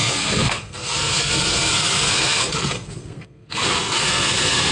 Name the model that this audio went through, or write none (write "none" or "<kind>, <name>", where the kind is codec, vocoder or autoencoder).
codec, SNAC